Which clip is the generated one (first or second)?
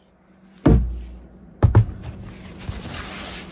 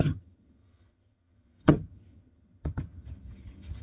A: second